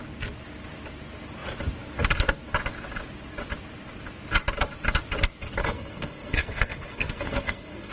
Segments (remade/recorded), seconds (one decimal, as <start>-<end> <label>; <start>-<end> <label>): 0.0-5.6 recorded; 5.6-7.9 remade